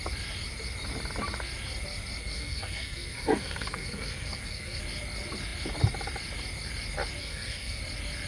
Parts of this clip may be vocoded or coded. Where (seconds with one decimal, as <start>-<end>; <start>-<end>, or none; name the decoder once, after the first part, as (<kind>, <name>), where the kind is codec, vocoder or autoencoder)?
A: 2.2-4.8 (codec, SNAC); 7.2-7.8